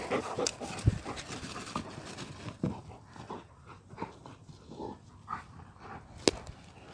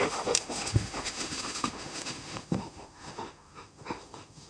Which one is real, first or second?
first